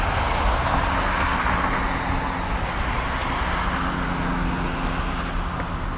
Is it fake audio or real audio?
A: real